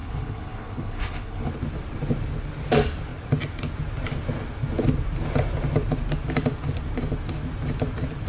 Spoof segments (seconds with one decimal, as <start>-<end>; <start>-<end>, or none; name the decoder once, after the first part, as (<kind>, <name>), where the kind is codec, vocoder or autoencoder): 0.0-1.5 (codec, HILCodec)